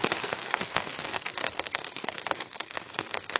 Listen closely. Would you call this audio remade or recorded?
remade